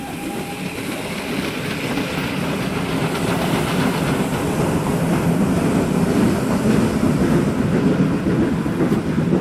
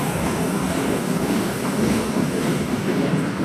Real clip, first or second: first